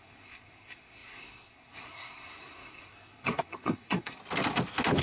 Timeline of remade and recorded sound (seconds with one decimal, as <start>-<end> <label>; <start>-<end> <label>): 0.0-4.2 remade; 4.2-5.0 recorded